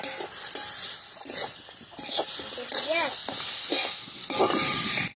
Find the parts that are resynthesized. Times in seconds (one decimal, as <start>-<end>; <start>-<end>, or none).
none